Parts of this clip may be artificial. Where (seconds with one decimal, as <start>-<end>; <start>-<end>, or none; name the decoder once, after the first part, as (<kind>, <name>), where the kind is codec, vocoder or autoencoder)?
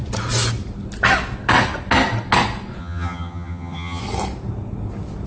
2.8-4.0 (vocoder, HiFi-GAN)